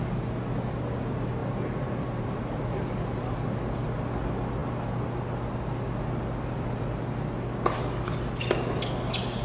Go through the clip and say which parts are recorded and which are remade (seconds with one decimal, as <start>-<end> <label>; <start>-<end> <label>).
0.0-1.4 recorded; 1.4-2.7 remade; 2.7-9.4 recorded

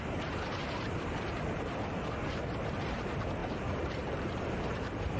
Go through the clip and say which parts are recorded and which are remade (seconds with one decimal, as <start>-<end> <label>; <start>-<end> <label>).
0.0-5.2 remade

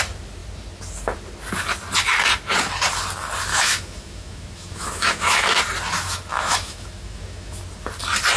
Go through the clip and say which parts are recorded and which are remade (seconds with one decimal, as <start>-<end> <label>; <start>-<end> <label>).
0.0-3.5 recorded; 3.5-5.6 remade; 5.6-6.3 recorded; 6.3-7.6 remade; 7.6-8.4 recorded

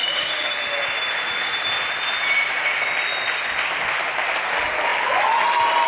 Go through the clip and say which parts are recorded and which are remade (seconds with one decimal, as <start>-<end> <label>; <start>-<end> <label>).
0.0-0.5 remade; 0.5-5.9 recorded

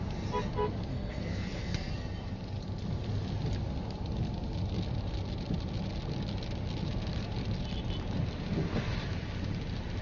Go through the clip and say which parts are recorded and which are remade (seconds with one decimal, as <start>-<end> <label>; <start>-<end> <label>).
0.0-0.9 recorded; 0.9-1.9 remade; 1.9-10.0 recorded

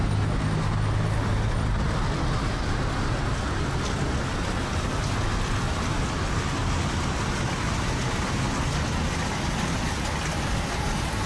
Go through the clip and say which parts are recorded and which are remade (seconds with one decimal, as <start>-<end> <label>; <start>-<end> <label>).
0.0-11.3 recorded